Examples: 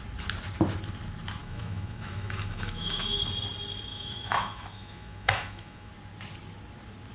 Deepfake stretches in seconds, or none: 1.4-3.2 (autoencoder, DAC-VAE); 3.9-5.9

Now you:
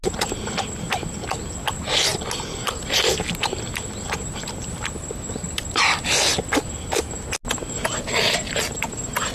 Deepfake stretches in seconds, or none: none